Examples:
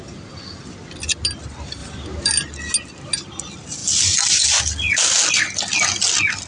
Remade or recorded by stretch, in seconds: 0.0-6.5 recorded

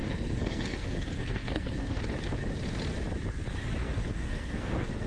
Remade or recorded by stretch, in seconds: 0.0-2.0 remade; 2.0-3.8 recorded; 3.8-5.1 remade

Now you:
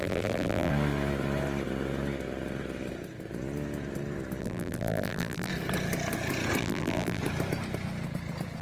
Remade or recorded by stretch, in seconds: 0.0-0.7 remade; 0.7-4.4 recorded; 4.4-5.5 remade; 5.5-6.6 recorded; 6.6-7.2 remade; 7.2-8.6 recorded

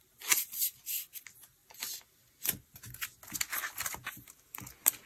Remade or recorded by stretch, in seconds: 0.0-5.1 recorded